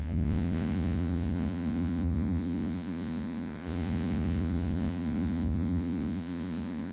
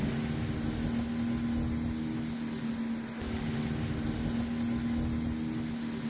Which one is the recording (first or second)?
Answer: second